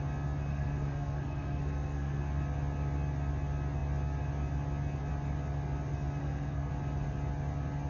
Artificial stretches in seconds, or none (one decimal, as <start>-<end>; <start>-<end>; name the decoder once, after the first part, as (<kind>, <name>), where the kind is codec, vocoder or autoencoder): 0.5-2.2 (codec, SNAC); 6.2-6.7